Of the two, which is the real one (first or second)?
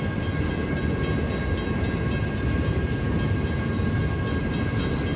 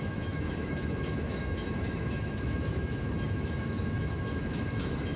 first